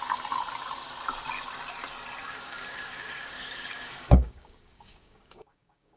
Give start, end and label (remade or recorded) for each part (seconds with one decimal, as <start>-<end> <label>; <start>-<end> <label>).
0.0-2.2 recorded; 2.2-6.0 remade